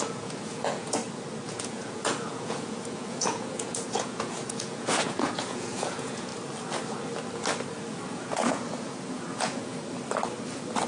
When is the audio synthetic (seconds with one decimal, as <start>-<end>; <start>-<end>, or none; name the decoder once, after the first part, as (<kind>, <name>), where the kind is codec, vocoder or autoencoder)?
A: 0.0-1.0 (vocoder, Vocos); 1.5-6.3; 8.1-9.7